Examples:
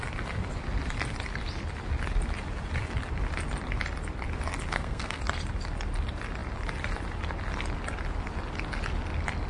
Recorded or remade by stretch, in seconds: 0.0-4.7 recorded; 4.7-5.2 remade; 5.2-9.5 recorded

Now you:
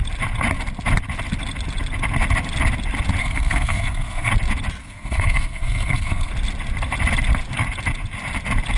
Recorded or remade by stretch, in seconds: 0.0-3.2 recorded; 3.2-4.3 remade; 4.3-4.8 recorded; 4.8-6.3 remade; 6.3-8.8 recorded

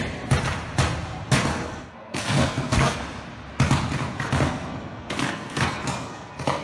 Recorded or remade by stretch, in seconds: 0.0-1.5 recorded; 1.5-3.0 remade; 3.0-4.1 recorded; 4.1-6.6 remade

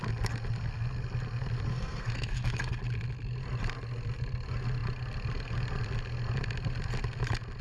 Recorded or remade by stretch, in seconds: 0.0-1.7 recorded; 1.7-2.8 remade; 2.8-7.6 recorded

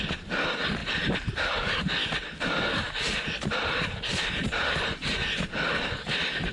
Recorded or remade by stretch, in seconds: 0.0-6.5 recorded

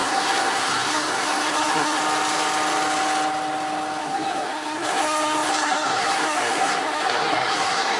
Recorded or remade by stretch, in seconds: 0.0-2.0 remade; 2.0-4.0 recorded; 4.0-8.0 remade

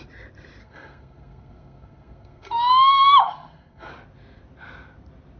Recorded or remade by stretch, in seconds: 0.0-0.6 recorded; 0.6-2.6 remade; 2.6-3.2 recorded; 3.2-3.9 remade; 3.9-5.4 recorded

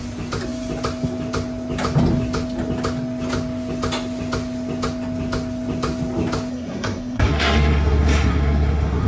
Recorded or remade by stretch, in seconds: 0.0-6.5 recorded; 6.5-9.1 remade